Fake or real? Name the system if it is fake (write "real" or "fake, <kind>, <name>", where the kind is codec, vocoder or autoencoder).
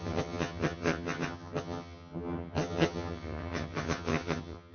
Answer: fake, vocoder, HiFi-GAN